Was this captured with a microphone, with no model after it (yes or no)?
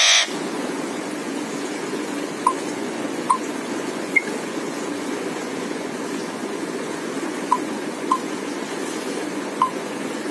no